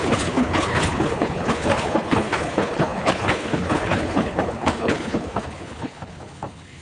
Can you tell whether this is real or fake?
fake